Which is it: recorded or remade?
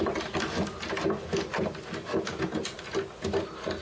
recorded